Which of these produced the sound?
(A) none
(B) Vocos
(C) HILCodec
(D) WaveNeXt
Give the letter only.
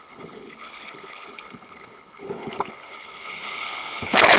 C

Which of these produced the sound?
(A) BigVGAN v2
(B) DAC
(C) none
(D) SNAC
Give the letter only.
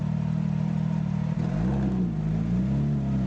C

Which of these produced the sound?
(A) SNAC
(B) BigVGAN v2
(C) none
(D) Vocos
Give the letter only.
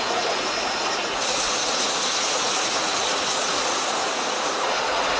D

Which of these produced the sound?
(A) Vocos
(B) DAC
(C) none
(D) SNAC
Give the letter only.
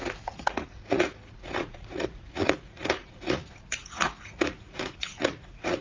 A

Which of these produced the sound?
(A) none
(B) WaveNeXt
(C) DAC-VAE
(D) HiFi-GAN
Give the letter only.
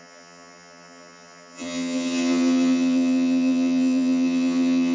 D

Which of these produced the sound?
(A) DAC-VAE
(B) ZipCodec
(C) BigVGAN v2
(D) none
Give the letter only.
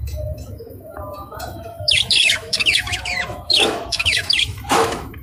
A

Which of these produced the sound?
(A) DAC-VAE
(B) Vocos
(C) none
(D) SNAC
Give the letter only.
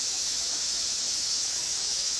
A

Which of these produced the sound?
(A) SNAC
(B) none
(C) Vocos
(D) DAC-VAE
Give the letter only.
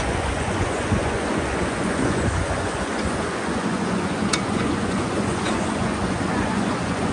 C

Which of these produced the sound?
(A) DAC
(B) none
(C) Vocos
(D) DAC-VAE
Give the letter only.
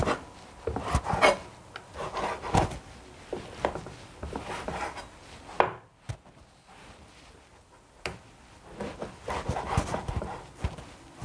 B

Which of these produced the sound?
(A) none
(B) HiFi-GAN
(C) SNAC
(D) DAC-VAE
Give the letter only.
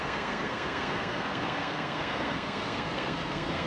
C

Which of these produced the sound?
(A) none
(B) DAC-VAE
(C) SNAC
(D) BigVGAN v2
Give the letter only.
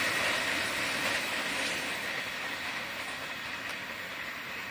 A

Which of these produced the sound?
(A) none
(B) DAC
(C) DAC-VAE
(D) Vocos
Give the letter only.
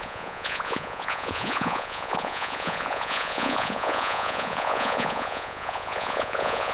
D